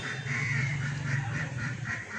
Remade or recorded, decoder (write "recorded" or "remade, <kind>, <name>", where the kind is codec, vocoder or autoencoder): remade, vocoder, BigVGAN v2